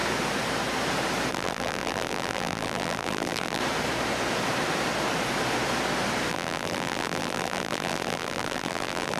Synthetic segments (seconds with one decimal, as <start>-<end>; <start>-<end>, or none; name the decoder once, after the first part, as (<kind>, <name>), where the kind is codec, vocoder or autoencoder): 1.3-3.6 (vocoder, BigVGAN v2); 6.3-9.2